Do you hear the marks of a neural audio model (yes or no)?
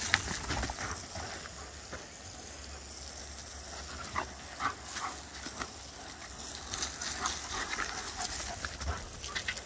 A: no